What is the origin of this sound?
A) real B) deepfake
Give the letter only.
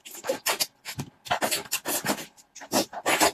A